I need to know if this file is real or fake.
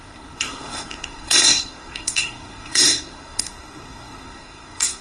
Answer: fake